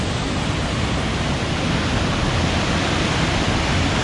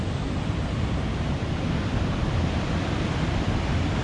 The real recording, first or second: first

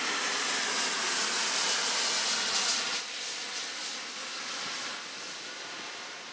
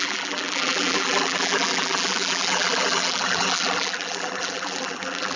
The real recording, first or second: first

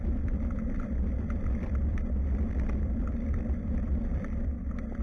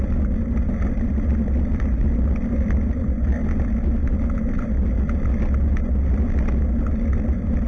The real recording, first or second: second